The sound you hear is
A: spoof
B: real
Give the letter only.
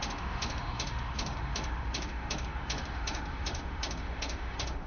A